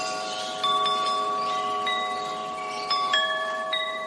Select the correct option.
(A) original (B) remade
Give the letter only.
B